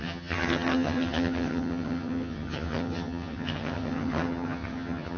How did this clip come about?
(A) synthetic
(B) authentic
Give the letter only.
A